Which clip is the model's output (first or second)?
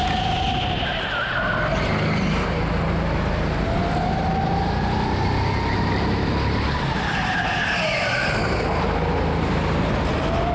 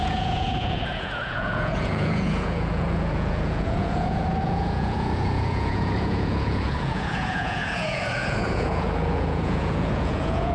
second